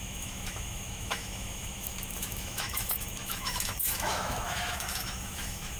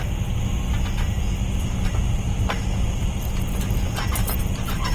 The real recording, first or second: second